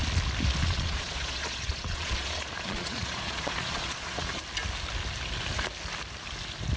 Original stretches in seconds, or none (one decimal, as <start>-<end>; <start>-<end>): 0.0-0.6; 4.4-6.8